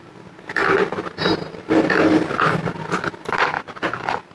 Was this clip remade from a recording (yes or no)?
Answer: no